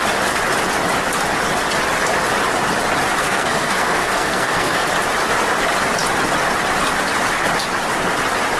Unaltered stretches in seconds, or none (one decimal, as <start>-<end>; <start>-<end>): 0.0-3.2; 4.9-8.6